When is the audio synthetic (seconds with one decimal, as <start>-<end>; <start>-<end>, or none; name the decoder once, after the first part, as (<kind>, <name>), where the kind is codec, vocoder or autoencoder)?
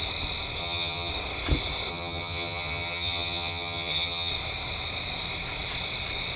0.6-1.1 (vocoder, HiFi-GAN); 1.9-4.3